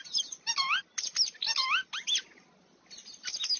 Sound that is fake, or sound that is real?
real